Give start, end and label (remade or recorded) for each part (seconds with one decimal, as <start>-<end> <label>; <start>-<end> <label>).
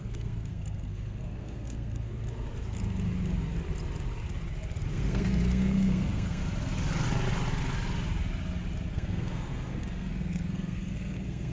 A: 0.0-2.1 remade; 2.1-4.9 recorded; 4.9-6.4 remade; 6.4-8.9 recorded; 8.9-11.5 remade